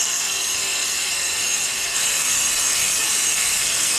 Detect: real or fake fake